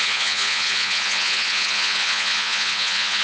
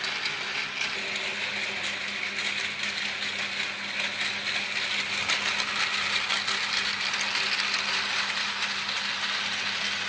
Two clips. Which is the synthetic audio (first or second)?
first